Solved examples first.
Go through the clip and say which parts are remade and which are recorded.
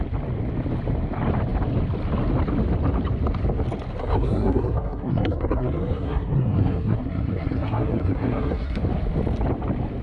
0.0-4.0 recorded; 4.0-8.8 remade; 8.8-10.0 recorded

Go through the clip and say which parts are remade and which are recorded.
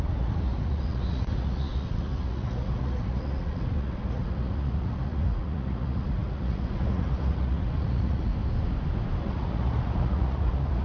0.0-8.3 remade; 8.3-9.2 recorded; 9.2-10.8 remade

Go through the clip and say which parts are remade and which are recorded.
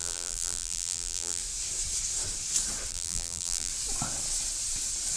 0.0-1.4 remade; 1.4-2.9 recorded; 2.9-3.7 remade; 3.7-5.2 recorded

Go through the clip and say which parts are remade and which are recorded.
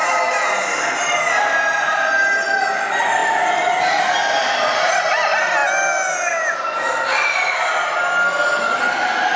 0.0-9.4 recorded